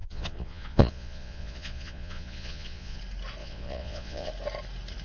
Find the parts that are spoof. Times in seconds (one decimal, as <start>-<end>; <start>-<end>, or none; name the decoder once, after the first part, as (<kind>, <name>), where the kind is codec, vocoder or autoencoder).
0.0-3.0 (vocoder, Vocos); 3.4-4.3